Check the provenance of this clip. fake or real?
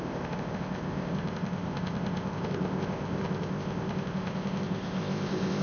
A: fake